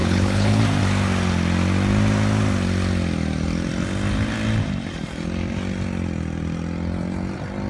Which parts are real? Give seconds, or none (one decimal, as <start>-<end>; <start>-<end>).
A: 0.6-7.7